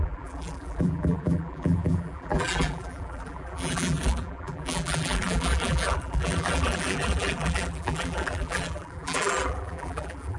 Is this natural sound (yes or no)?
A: no